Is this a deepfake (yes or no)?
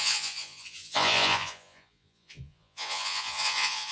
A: yes